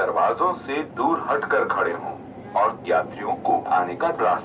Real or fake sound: real